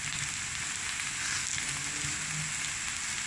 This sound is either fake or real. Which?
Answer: real